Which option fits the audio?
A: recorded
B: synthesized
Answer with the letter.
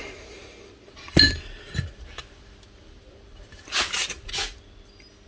A